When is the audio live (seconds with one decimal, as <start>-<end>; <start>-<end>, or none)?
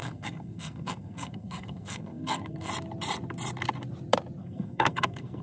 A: 2.7-4.4